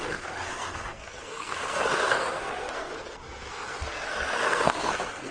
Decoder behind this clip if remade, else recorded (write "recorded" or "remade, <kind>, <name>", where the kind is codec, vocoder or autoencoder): remade, codec, SNAC